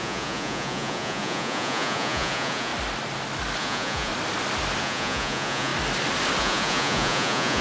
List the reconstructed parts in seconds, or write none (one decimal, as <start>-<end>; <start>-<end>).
0.0-2.7; 3.6-4.1; 4.8-5.7; 6.4-7.6